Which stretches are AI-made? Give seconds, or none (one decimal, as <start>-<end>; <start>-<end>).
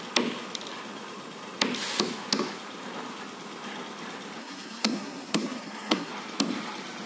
4.4-6.1